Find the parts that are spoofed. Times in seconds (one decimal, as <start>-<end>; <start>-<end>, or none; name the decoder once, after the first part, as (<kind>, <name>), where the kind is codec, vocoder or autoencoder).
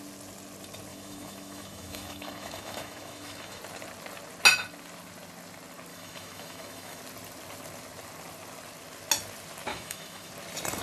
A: 0.9-3.6 (autoencoder, DAC-VAE); 5.9-7.0; 9.7-10.3